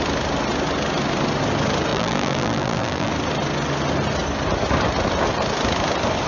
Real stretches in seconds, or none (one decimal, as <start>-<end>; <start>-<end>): 0.0-1.9; 3.1-6.3